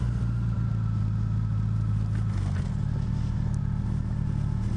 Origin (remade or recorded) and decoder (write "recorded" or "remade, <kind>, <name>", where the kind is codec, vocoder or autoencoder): recorded